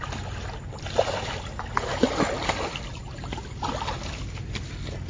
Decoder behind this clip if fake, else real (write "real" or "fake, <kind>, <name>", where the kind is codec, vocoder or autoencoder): real